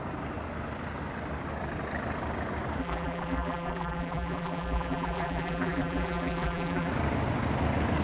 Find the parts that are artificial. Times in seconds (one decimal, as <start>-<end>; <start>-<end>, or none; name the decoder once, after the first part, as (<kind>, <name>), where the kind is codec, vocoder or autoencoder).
2.8-6.9 (vocoder, BigVGAN v2)